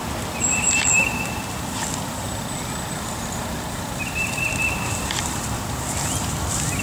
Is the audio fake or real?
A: fake